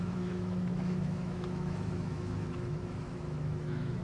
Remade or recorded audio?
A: remade